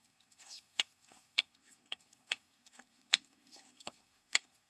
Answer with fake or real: fake